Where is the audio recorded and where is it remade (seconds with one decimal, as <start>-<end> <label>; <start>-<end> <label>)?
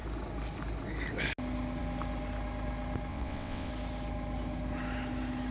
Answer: 0.0-3.1 recorded; 3.1-3.7 remade; 3.7-5.5 recorded